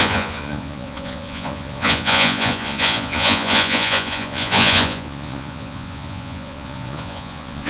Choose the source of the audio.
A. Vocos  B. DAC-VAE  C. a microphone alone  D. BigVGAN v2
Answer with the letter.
A